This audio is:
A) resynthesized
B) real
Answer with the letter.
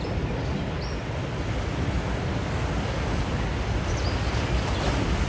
B